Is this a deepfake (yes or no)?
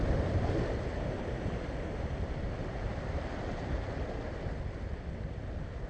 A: no